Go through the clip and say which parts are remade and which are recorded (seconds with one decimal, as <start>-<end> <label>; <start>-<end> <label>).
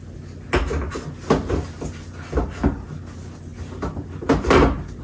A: 0.0-5.0 recorded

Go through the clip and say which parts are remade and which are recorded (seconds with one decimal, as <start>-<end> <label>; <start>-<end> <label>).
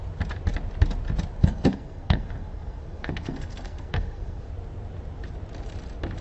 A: 0.0-1.4 recorded; 1.4-4.5 remade; 4.5-6.2 recorded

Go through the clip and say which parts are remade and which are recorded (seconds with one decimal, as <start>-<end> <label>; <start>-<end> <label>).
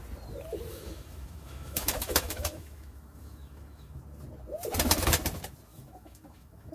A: 0.0-0.7 recorded; 0.7-4.0 remade; 4.0-5.7 recorded; 5.7-6.7 remade